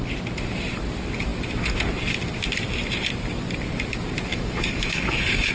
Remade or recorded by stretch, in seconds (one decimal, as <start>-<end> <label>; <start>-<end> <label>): 0.0-4.3 recorded; 4.3-5.5 remade